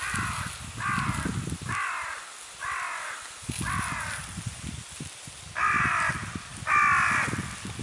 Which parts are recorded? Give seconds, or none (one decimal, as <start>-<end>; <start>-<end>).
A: 0.0-7.8